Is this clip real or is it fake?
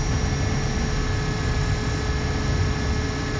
real